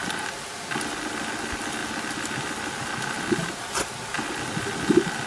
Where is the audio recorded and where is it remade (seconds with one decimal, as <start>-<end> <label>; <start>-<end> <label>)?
0.0-5.3 recorded